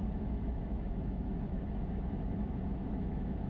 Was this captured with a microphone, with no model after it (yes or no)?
no